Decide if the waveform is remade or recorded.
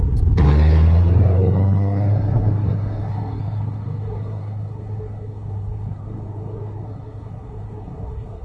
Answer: remade